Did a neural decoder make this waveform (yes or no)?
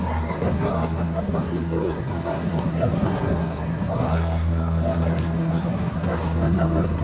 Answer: yes